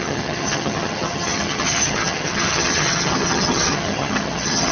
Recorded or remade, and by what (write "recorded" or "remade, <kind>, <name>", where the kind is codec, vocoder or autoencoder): remade, vocoder, HiFi-GAN